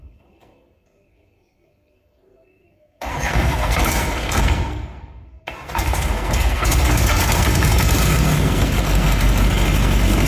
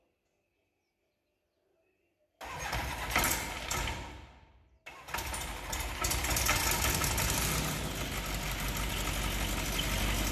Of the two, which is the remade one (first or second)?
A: first